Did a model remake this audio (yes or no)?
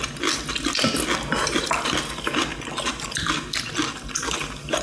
no